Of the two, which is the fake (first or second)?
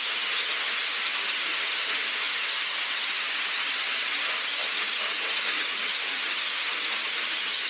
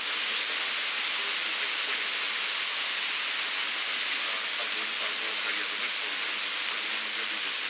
first